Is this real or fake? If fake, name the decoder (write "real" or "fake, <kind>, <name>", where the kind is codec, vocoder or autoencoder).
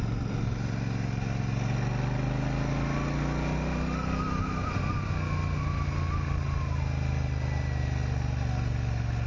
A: real